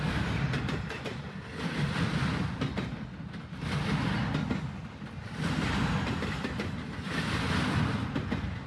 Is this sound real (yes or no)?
yes